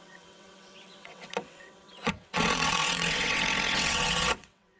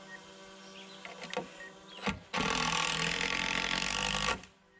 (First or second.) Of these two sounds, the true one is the second